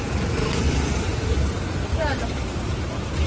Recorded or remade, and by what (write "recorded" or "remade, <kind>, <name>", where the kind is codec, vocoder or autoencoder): remade, vocoder, BigVGAN v2